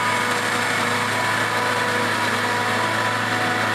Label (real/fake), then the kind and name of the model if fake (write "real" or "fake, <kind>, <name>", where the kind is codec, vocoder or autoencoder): real